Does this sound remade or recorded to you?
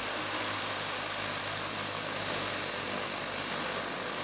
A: recorded